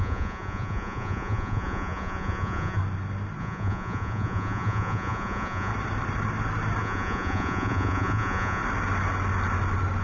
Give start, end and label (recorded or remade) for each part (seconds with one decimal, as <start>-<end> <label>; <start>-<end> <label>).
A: 0.0-2.8 remade; 2.8-3.4 recorded; 3.4-5.7 remade; 5.7-6.8 recorded; 6.8-8.6 remade; 8.6-10.0 recorded

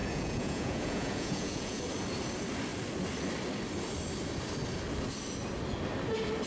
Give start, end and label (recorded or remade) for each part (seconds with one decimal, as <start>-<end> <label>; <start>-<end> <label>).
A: 0.0-1.8 remade; 1.8-6.5 recorded

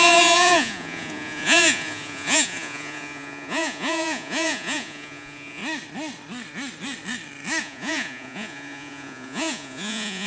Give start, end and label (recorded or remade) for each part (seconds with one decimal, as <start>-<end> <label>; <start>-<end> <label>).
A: 0.0-5.6 remade; 5.6-7.6 recorded; 7.6-10.3 remade

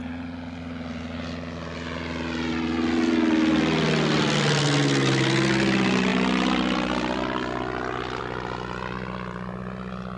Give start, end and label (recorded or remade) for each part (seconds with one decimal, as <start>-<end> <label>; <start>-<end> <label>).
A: 0.0-10.2 recorded